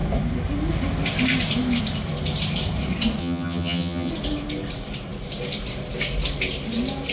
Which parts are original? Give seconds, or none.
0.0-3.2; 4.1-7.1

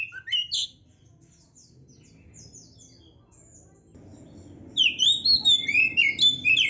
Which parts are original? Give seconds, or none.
0.0-6.7

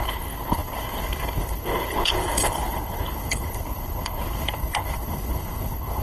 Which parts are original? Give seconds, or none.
none

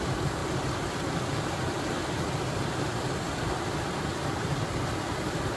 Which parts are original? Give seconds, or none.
0.0-5.6

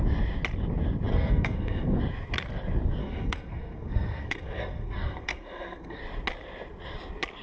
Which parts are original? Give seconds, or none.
0.0-1.1; 2.0-3.0; 6.0-7.4

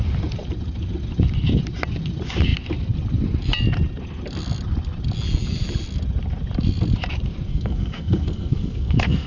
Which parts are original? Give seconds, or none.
0.0-7.5

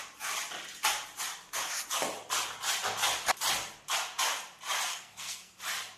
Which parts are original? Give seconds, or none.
0.0-4.9; 5.6-6.0